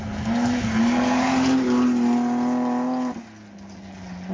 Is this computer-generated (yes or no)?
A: no